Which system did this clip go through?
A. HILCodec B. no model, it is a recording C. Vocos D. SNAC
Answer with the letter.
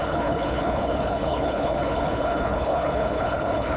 A